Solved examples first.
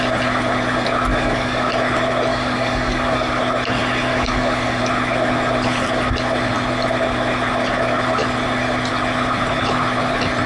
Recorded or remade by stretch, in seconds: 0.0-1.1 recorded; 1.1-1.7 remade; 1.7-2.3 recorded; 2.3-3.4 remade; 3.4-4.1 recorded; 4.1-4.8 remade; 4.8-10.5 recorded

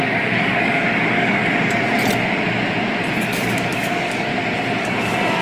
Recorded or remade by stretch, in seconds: 0.0-1.4 remade; 1.4-3.1 recorded; 3.1-4.3 remade; 4.3-4.8 recorded; 4.8-5.4 remade